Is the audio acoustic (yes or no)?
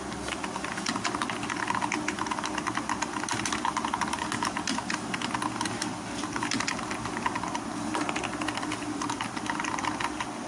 yes